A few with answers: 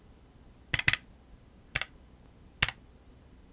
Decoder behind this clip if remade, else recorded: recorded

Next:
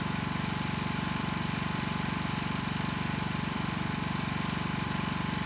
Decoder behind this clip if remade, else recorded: remade, vocoder, BigVGAN v2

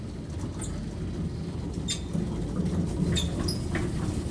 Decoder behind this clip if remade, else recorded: recorded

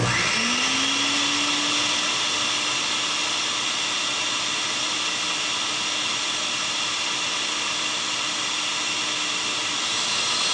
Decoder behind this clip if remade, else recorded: recorded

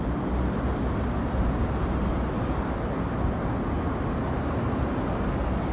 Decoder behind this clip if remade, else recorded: recorded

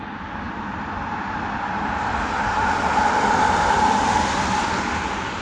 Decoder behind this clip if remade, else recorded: recorded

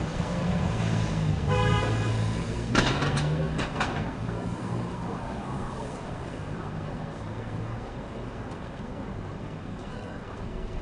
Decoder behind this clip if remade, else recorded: remade, codec, SNAC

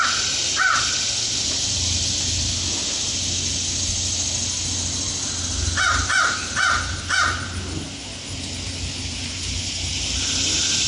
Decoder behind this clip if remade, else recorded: recorded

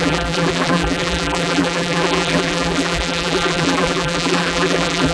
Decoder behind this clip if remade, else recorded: remade, vocoder, BigVGAN v2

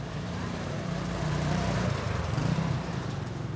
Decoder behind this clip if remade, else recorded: remade, vocoder, BigVGAN v2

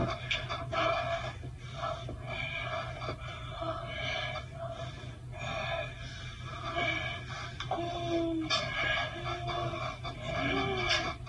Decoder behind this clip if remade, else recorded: recorded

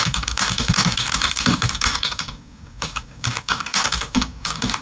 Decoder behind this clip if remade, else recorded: remade, codec, DAC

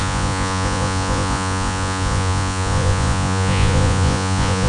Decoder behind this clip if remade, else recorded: remade, vocoder, Vocos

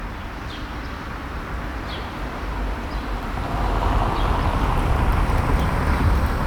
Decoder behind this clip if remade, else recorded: remade, vocoder, BigVGAN v2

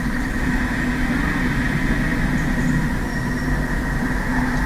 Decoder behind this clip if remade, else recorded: recorded